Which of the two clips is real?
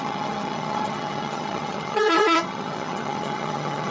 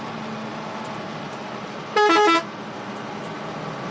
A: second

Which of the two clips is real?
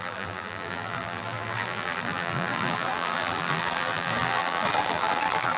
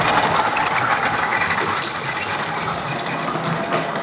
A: second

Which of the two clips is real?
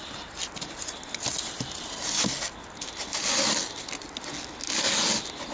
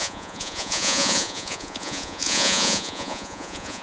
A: first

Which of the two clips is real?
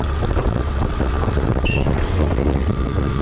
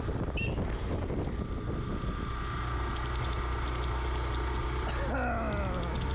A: second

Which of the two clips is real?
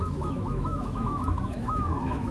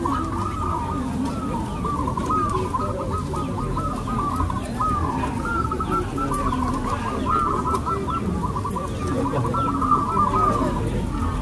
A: second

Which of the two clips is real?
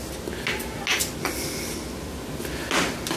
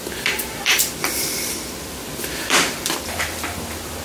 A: first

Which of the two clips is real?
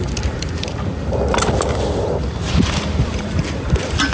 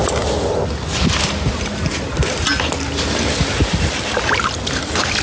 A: second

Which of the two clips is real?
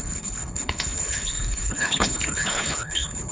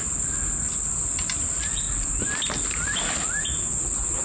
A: second